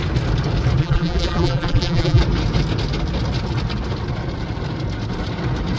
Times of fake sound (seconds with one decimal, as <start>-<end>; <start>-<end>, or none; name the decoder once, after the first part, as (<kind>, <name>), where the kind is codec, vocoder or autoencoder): 0.8-2.2 (vocoder, BigVGAN v2)